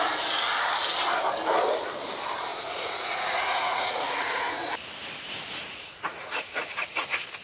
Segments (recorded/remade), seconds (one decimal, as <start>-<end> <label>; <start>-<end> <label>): 0.0-2.5 recorded; 2.5-4.7 remade; 4.7-5.6 recorded; 5.6-6.2 remade; 6.2-7.4 recorded